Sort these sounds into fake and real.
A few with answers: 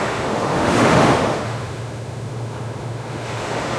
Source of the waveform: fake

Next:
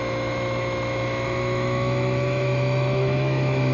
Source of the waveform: fake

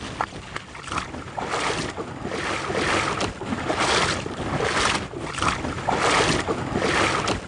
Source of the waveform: real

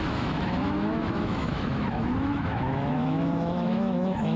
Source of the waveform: fake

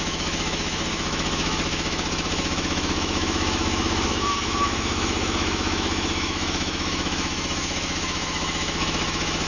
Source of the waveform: fake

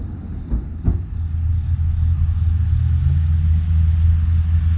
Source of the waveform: real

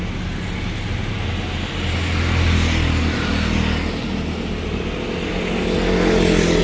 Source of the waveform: real